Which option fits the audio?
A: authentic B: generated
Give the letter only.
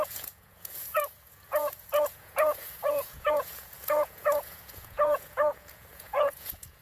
B